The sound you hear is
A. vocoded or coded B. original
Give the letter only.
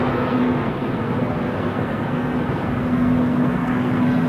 A